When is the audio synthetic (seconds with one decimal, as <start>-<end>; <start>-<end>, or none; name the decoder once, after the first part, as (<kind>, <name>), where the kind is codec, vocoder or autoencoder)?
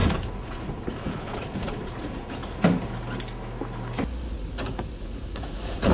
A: 0.0-2.4 (vocoder, Vocos); 4.3-5.9